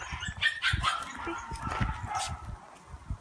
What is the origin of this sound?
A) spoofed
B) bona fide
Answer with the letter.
B